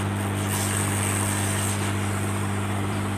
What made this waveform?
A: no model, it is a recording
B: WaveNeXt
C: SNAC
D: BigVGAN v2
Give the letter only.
A